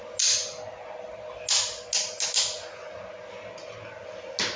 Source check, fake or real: real